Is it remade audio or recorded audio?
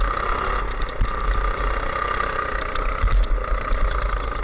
recorded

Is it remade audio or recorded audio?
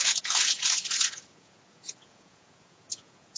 remade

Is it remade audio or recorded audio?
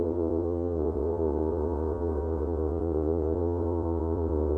remade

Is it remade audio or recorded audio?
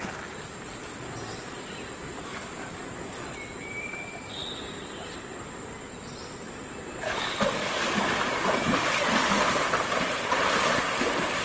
recorded